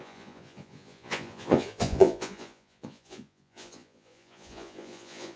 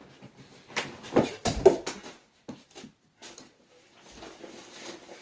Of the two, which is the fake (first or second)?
first